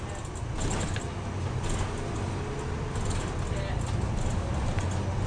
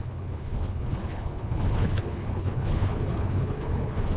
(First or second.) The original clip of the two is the first